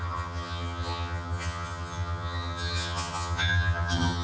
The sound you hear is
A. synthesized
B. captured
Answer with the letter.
A